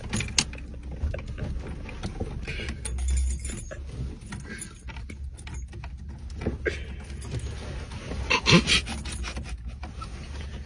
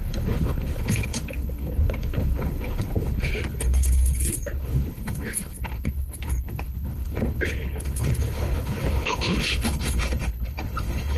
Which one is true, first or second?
first